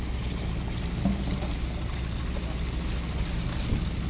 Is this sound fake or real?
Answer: real